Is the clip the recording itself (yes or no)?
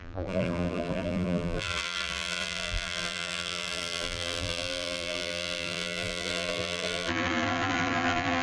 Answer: no